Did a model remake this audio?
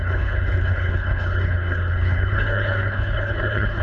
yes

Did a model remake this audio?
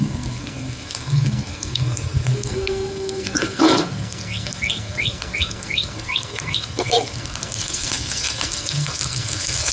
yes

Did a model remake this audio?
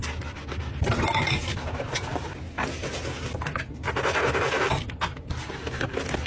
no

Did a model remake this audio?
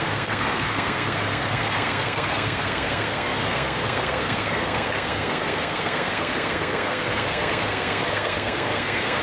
yes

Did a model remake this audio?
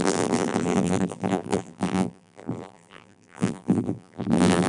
yes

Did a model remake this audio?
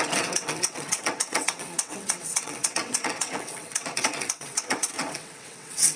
yes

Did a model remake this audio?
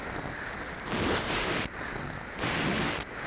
no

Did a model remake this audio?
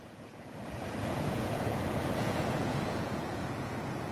yes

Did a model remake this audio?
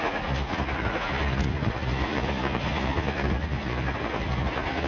yes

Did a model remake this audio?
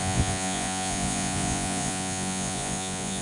yes